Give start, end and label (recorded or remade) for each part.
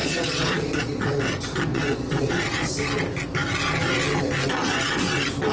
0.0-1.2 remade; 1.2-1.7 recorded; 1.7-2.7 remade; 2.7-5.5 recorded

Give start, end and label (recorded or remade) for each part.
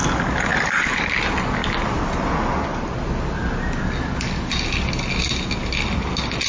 0.0-6.5 recorded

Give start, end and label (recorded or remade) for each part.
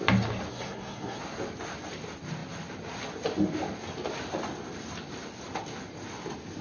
0.0-0.5 recorded; 0.5-1.2 remade; 1.2-6.6 recorded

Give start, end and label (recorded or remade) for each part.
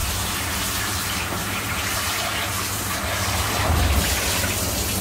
0.0-3.0 remade; 3.0-5.0 recorded